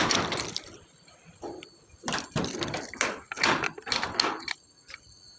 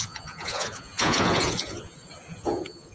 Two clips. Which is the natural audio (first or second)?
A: first